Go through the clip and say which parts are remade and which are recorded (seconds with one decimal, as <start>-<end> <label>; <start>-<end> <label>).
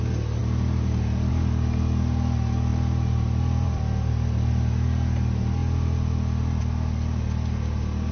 0.0-0.4 recorded; 0.4-1.3 remade; 1.3-2.7 recorded; 2.7-4.1 remade; 4.1-8.1 recorded